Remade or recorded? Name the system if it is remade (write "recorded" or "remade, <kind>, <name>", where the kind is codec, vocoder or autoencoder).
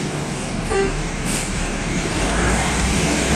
remade, codec, DAC